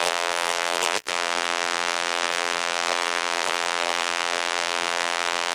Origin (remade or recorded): remade